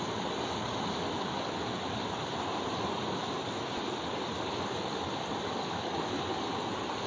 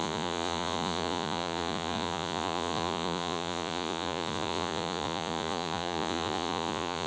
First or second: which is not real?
second